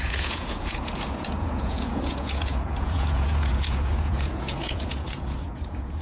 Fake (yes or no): yes